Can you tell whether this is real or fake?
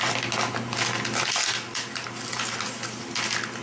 real